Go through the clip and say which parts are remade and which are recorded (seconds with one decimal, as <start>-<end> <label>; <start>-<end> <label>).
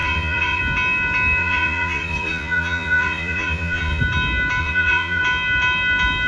0.0-0.6 remade; 0.6-1.4 recorded; 1.4-4.0 remade; 4.0-4.6 recorded; 4.6-5.2 remade; 5.2-6.3 recorded